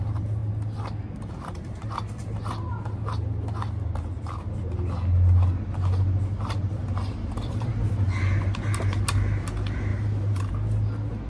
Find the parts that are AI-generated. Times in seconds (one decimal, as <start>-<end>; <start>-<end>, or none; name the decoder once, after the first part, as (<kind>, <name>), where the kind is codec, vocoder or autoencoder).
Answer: 6.8-7.7 (vocoder, BigVGAN v2); 9.9-10.5

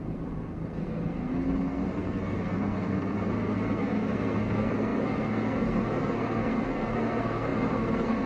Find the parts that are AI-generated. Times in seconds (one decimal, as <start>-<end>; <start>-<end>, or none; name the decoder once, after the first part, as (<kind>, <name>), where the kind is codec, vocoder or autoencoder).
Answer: 0.0-8.3 (codec, SNAC)